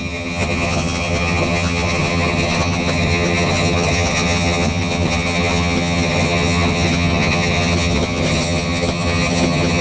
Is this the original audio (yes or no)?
no